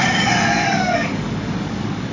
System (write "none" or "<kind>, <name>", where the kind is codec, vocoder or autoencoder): codec, DAC